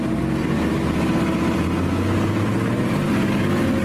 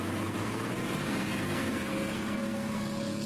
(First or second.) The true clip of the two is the first